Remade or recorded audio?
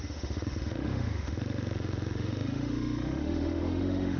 remade